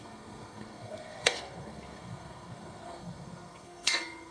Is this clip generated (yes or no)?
yes